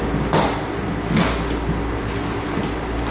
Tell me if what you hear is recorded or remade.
recorded